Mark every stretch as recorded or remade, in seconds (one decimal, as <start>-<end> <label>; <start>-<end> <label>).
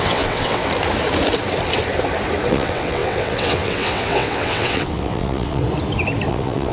0.0-0.6 remade; 0.6-2.5 recorded; 2.5-5.6 remade; 5.6-6.3 recorded; 6.3-6.7 remade